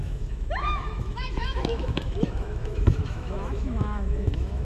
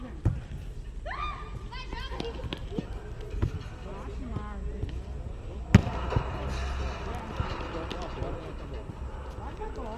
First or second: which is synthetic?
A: first